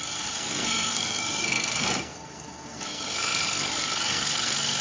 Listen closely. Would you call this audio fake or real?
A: fake